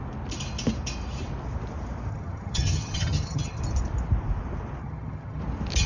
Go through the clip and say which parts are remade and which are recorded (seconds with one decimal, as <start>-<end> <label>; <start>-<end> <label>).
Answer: 0.0-2.1 recorded; 2.1-3.6 remade; 3.6-4.8 recorded; 4.8-5.4 remade; 5.4-5.9 recorded